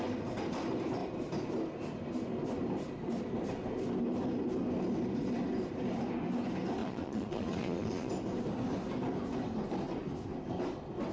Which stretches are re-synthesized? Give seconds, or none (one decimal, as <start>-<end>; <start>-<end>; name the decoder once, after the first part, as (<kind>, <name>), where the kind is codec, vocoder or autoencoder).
6.8-8.1 (vocoder, Vocos)